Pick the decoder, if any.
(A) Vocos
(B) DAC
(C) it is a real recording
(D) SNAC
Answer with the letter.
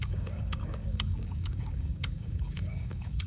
B